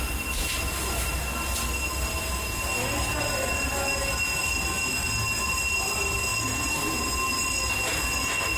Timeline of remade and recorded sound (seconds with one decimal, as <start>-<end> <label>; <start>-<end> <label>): 0.0-8.6 recorded